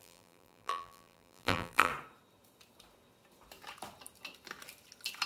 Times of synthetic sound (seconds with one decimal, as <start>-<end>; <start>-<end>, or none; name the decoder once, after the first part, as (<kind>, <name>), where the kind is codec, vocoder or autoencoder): 0.0-1.9 (vocoder, BigVGAN v2)